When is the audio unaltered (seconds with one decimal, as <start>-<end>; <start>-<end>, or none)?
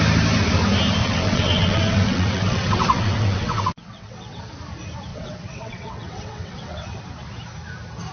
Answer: 0.0-1.0; 4.4-5.1; 7.0-8.1